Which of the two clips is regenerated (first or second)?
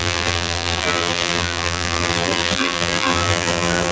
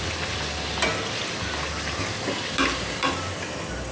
first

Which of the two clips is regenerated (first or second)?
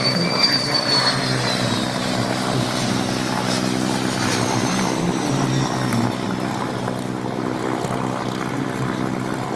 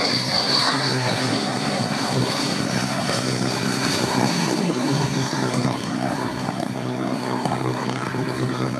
second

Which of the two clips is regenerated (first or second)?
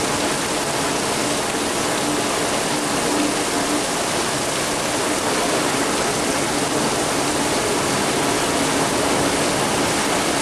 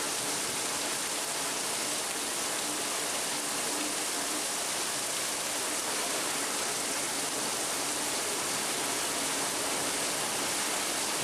second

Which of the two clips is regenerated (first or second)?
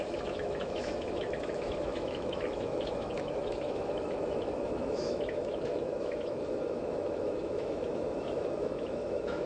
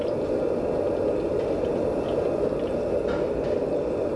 first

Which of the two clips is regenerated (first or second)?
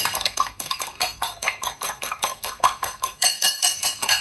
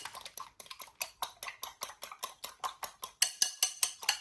first